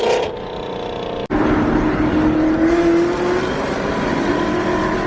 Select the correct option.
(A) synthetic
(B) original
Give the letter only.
B